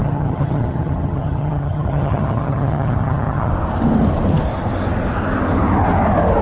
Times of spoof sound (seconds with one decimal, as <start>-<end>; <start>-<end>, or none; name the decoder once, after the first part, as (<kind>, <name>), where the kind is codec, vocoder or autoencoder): 0.0-3.5 (vocoder, HiFi-GAN)

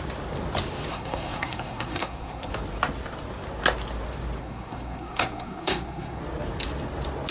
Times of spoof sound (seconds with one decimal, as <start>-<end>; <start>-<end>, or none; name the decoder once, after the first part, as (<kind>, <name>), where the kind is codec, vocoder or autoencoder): 0.9-2.5 (codec, SNAC); 4.4-6.2

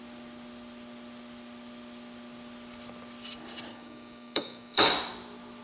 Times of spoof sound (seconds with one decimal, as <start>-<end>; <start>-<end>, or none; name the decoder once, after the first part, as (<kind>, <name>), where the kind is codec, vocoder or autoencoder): 3.7-4.9 (codec, DAC)

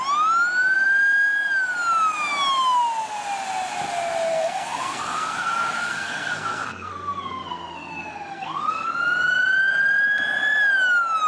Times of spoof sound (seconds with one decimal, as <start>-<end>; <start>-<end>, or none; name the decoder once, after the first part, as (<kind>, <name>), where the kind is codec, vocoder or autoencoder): 4.3-8.9 (codec, SNAC)

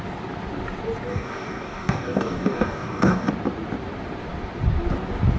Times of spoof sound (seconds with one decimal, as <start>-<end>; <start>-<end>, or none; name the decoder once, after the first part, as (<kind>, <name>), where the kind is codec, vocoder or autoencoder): 1.1-3.3 (codec, DAC)